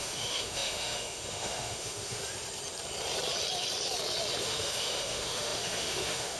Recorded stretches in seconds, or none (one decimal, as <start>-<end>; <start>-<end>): 2.2-4.4